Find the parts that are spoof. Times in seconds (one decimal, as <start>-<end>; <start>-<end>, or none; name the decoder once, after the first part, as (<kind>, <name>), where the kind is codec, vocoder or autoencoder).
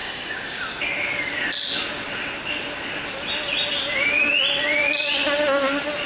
0.0-0.6 (codec, DAC)